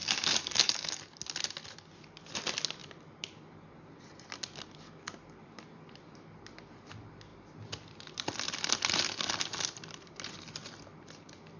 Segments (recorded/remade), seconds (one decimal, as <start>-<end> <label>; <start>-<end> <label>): 0.0-1.0 remade; 1.0-11.6 recorded